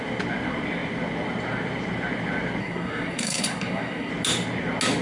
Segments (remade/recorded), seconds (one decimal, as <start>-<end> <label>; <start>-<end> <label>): 0.0-2.6 recorded; 2.6-4.1 remade; 4.1-5.0 recorded